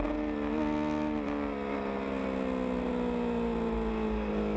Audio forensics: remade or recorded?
recorded